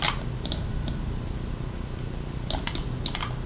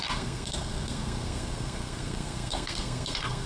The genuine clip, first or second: first